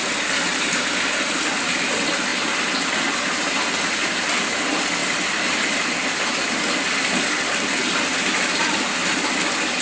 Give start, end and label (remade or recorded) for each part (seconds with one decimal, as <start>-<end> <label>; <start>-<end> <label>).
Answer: 0.0-2.3 recorded; 2.3-3.7 remade; 3.7-5.0 recorded; 5.0-8.4 remade; 8.4-9.8 recorded